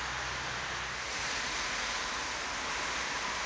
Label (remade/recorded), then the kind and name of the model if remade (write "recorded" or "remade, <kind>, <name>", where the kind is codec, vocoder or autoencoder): remade, vocoder, BigVGAN v2